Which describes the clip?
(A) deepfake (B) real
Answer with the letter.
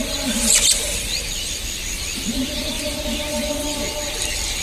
B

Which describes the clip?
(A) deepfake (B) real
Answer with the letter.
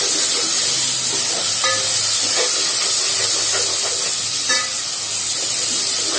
B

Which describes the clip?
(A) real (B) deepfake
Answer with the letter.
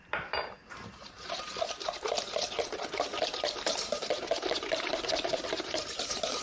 B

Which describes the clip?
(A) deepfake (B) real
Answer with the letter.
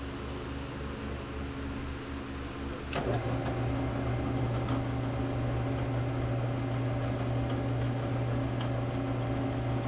B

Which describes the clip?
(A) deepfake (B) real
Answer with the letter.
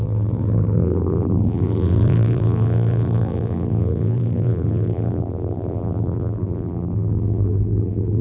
A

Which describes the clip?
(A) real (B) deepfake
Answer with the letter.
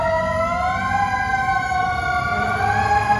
A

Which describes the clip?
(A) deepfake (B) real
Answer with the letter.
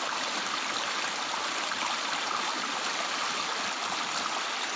B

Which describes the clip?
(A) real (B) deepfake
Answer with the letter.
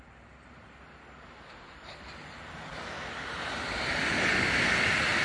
B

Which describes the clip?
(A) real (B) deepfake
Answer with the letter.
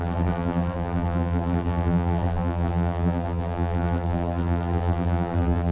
B